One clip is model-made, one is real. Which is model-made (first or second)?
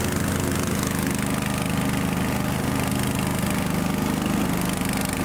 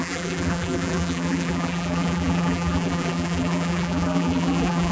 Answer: second